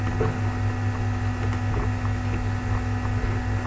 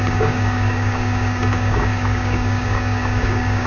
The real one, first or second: first